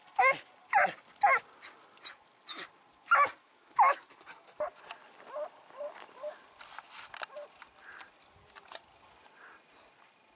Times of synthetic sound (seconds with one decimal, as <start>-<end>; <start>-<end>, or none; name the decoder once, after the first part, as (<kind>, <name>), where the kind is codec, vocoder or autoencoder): 3.4-4.1 (autoencoder, DAC-VAE)